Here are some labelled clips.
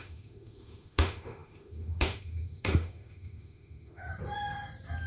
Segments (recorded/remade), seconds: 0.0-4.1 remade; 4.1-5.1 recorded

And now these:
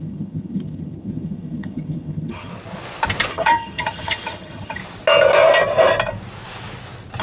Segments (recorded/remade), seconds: 0.0-2.5 remade; 2.5-3.3 recorded; 3.3-4.8 remade; 4.8-7.2 recorded